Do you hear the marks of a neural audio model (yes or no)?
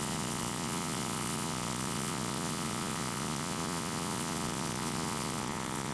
yes